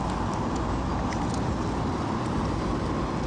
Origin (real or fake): real